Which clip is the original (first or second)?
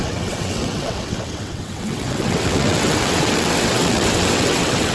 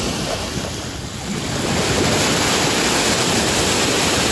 second